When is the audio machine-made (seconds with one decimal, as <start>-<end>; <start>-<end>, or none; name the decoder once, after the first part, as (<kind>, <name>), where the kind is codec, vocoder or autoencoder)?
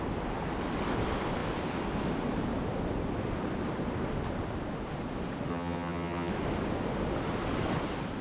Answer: 5.5-6.3 (vocoder, HiFi-GAN)